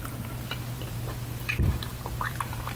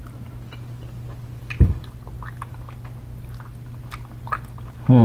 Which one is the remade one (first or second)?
first